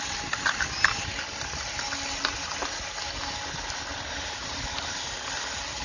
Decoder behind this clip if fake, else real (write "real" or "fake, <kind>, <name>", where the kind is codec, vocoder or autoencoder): real